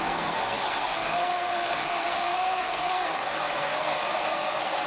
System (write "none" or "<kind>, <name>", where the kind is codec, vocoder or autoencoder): codec, SNAC